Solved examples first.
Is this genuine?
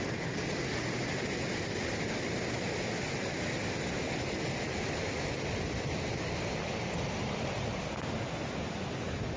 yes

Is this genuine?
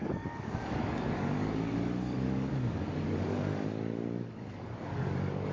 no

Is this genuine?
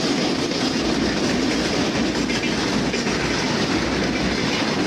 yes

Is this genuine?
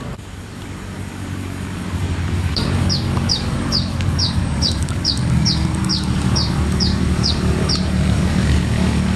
no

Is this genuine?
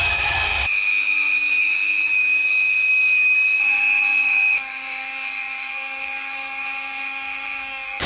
no